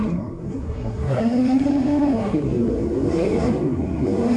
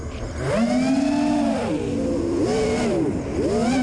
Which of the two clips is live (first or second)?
second